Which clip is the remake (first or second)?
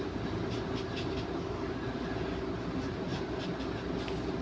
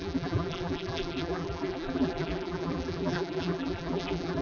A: second